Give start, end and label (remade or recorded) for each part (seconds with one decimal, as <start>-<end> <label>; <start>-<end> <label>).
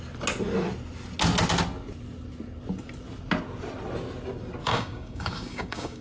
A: 0.0-4.6 recorded; 4.6-6.0 remade